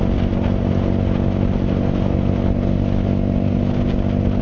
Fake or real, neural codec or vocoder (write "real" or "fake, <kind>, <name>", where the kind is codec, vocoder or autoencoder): real